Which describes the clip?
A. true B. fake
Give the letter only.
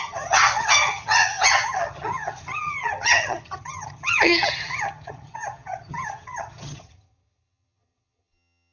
B